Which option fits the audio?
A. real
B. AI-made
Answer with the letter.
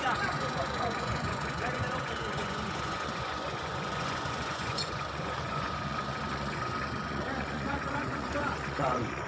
B